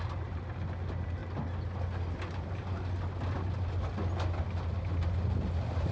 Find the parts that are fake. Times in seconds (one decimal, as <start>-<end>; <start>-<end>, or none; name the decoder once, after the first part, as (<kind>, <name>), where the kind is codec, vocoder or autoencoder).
none